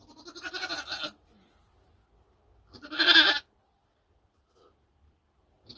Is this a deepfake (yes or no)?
no